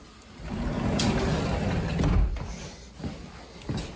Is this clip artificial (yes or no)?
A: no